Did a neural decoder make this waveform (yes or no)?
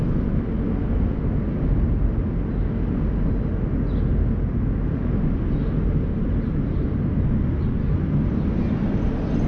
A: no